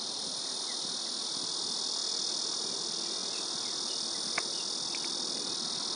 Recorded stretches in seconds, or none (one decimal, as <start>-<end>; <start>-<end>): 0.0-6.0